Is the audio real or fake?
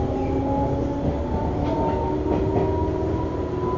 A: real